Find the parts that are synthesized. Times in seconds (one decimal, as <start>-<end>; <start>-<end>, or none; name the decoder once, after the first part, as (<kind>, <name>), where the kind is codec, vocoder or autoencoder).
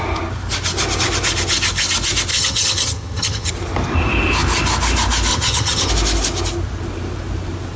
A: 2.3-3.5 (vocoder, HiFi-GAN); 5.3-5.9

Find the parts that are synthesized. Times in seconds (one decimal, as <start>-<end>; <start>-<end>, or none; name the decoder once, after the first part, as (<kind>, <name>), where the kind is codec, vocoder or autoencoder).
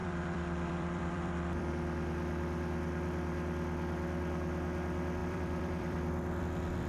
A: 0.0-1.7 (vocoder, BigVGAN v2); 5.2-6.4